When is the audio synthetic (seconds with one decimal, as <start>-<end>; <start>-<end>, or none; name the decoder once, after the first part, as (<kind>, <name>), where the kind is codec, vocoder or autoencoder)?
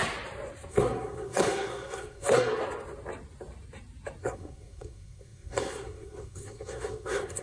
0.7-2.6 (codec, SNAC); 4.2-7.4